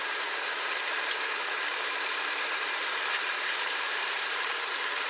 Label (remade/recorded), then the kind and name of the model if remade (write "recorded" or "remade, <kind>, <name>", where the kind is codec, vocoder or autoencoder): remade, vocoder, BigVGAN v2